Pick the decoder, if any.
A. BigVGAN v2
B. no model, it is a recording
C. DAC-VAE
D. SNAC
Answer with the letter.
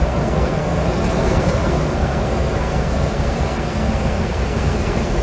D